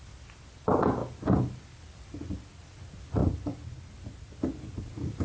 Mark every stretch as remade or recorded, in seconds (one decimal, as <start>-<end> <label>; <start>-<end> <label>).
0.0-5.2 recorded